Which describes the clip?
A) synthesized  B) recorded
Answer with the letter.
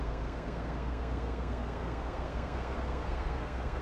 A